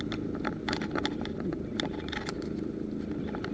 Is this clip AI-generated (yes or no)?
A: no